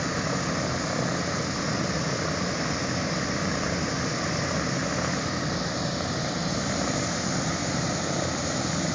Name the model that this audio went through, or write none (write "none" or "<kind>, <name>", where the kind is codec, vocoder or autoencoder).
none